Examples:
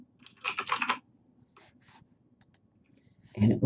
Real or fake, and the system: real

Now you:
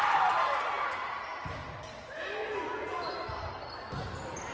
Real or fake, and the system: real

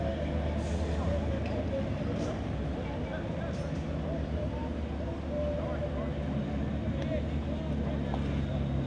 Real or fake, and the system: real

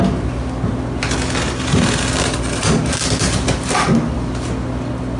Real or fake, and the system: real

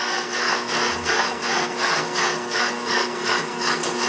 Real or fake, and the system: fake, codec, SNAC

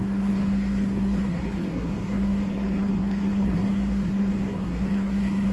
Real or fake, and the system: fake, codec, SNAC